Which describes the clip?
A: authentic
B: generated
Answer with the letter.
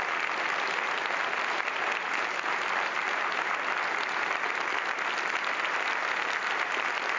A